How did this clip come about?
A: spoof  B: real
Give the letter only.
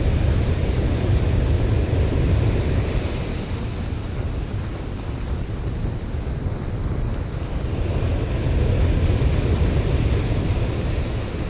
B